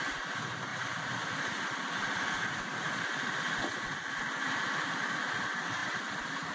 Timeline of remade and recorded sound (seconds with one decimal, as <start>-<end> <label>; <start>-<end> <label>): 0.0-6.5 recorded

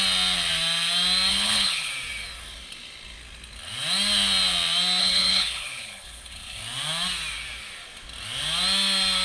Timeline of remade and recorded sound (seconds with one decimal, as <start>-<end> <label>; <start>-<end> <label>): 0.0-1.3 recorded; 1.3-1.9 remade; 1.9-5.0 recorded; 5.0-6.6 remade; 6.6-9.2 recorded